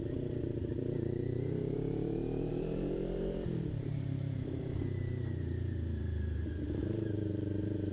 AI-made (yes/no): yes